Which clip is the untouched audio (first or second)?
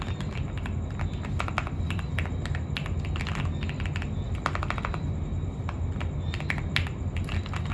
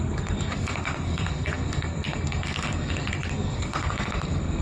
first